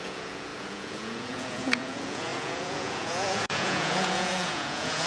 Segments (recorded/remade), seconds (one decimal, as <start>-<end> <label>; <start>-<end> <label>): 0.0-5.1 remade